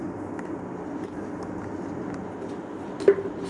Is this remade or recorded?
recorded